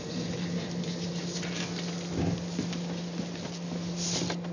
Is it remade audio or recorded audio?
recorded